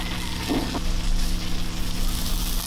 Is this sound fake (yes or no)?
no